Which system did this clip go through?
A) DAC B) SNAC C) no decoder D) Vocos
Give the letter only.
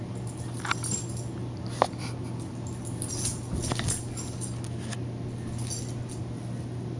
C